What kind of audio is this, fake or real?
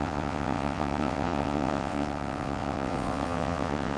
fake